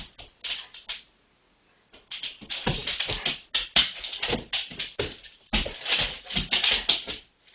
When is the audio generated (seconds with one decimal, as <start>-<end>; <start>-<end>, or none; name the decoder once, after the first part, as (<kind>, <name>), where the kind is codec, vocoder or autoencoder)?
none